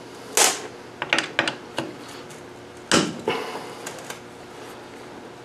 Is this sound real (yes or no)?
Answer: yes